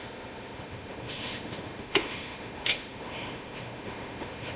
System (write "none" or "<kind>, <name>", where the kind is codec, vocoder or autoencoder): autoencoder, DAC-VAE